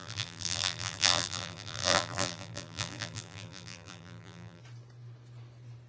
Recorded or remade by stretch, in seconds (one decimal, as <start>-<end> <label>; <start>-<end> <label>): 0.0-4.6 remade; 4.6-5.9 recorded